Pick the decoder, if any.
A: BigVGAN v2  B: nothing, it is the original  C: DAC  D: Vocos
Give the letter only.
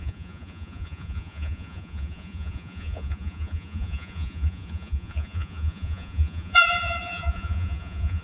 D